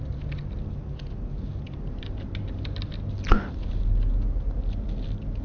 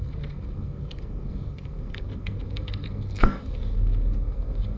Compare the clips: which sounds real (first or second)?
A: first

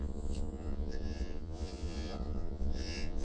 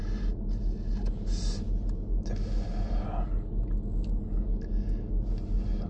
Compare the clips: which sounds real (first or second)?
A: second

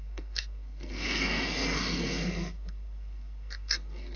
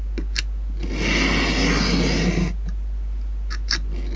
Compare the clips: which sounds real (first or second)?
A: second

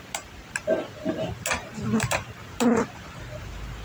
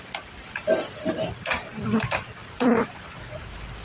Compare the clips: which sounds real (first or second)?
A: first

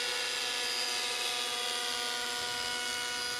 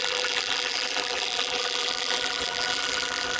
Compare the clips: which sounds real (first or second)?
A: first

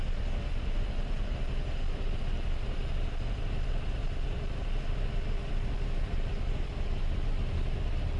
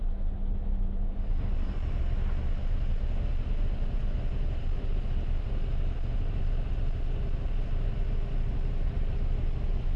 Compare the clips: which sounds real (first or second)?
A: second